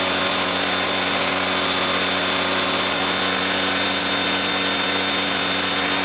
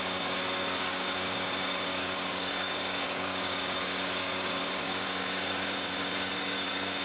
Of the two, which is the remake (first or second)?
second